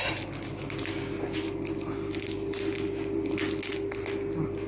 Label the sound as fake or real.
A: real